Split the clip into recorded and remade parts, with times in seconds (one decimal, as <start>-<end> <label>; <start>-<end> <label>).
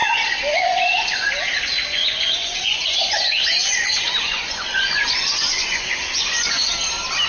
0.0-1.3 remade; 1.3-1.8 recorded; 1.8-3.2 remade; 3.2-3.6 recorded; 3.6-6.7 remade; 6.7-7.3 recorded